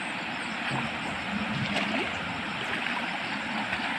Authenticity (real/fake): real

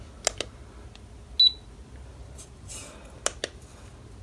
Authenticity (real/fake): real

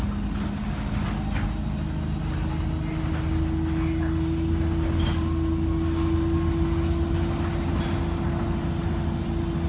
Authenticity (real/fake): real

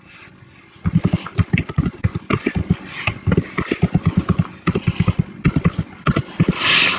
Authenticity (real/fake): real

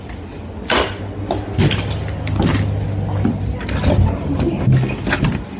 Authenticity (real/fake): real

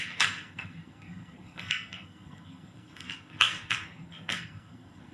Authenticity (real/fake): fake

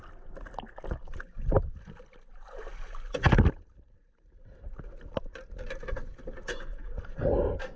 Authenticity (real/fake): real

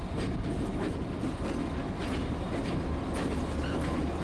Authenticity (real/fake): real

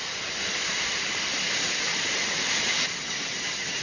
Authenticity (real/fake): real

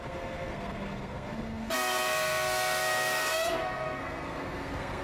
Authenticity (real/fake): fake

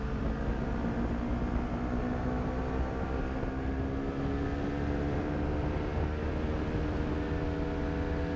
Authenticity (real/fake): real